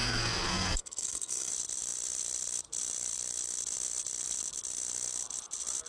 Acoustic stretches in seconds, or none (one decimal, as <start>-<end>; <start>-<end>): 1.5-5.9